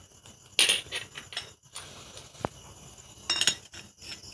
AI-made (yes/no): no